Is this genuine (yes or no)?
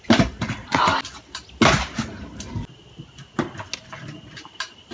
yes